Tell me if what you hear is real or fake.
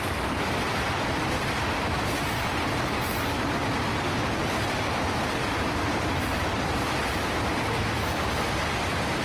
fake